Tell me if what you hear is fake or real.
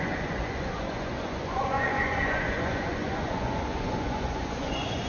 fake